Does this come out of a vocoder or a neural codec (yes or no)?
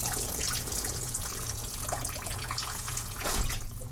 yes